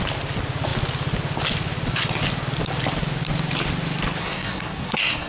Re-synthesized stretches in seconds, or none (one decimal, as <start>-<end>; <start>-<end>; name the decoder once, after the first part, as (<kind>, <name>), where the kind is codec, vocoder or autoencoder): 4.2-5.3 (codec, SNAC)